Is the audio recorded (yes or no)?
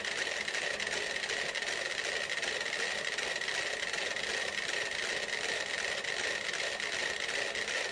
yes